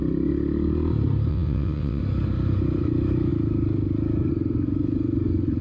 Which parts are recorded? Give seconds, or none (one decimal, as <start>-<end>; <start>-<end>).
0.0-1.3; 2.0-5.6